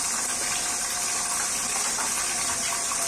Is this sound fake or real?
real